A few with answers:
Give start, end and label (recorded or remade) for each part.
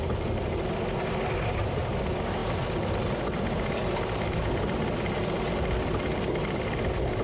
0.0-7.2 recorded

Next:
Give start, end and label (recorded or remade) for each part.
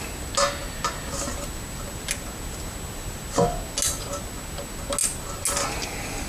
0.0-6.3 recorded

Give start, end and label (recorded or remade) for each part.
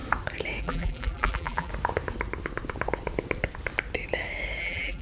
0.0-0.6 recorded; 0.6-1.7 remade; 1.7-4.6 recorded; 4.6-5.0 remade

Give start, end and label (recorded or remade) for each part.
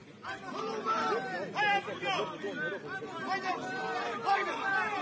0.0-5.0 recorded